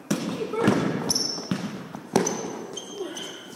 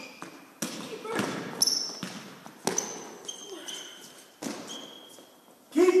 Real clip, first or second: second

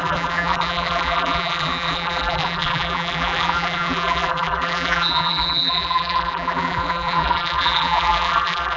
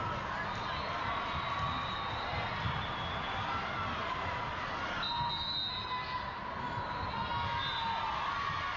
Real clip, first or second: second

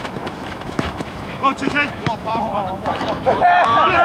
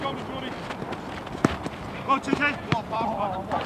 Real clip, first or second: second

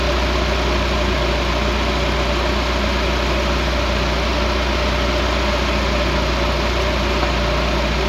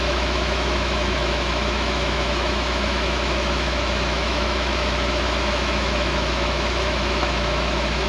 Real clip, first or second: first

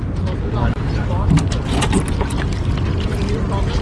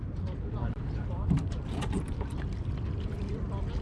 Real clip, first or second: first